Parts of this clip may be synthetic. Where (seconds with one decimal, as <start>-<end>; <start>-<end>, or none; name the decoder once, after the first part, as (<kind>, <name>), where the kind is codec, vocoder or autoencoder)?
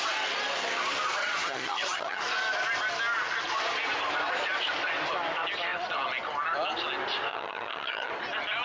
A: 1.2-2.2 (vocoder, HiFi-GAN); 7.3-8.1